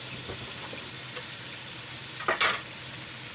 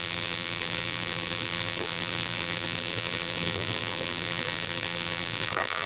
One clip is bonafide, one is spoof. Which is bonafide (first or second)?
first